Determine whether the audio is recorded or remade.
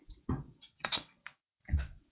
remade